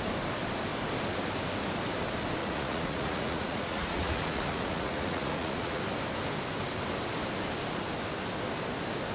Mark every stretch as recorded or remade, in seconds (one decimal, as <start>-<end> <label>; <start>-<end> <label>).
0.0-2.4 recorded; 2.4-5.8 remade; 5.8-9.1 recorded